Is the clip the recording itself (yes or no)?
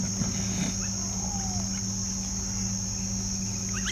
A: yes